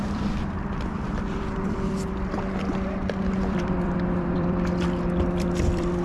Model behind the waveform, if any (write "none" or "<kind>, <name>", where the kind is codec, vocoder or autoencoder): vocoder, BigVGAN v2